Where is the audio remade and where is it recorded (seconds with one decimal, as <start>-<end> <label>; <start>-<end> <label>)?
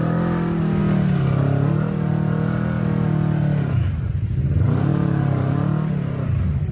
0.0-6.7 recorded